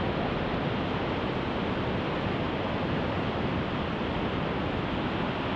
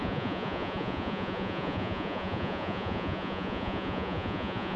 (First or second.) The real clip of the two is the first